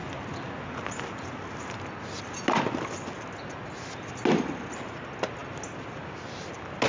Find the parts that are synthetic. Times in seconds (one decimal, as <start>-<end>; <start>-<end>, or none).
none